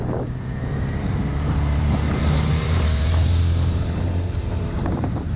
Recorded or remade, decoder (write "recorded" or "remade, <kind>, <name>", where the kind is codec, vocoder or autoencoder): remade, vocoder, BigVGAN v2